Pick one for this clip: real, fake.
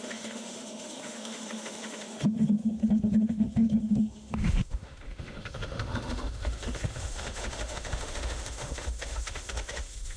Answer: fake